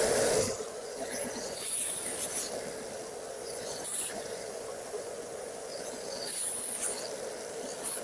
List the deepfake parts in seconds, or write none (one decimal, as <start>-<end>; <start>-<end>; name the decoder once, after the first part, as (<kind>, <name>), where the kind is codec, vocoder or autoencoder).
0.8-1.9 (vocoder, Vocos); 3.3-6.6